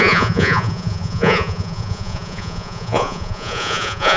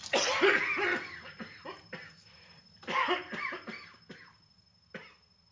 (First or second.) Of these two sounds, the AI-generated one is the first